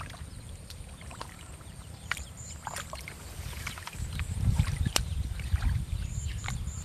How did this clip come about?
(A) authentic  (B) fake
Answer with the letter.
B